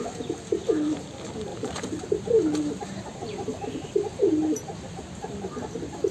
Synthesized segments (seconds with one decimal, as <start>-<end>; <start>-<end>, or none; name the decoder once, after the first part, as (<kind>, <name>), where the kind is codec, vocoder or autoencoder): 1.5-2.2 (vocoder, BigVGAN v2); 3.1-5.5